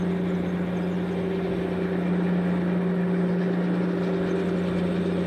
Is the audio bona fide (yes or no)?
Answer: yes